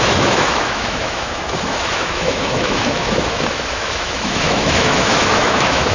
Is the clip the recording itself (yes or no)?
no